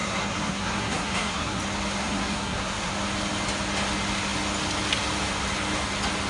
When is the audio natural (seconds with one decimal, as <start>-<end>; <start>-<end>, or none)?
1.6-2.0; 2.9-6.3